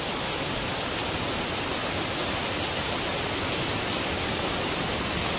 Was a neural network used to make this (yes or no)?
no